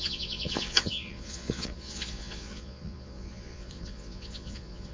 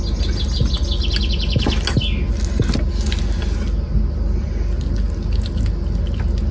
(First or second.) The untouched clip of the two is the second